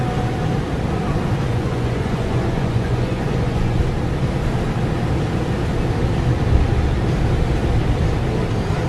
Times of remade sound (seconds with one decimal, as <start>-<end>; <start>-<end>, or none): 1.5-3.8